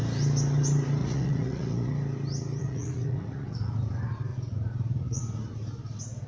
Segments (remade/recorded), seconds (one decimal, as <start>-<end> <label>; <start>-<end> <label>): 0.0-1.0 recorded; 1.0-1.9 remade; 1.9-2.6 recorded; 2.6-3.7 remade; 3.7-4.3 recorded; 4.3-5.2 remade; 5.2-6.3 recorded